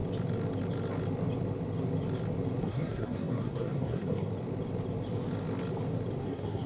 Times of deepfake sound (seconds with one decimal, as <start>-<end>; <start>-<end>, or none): 2.6-4.3; 6.2-6.7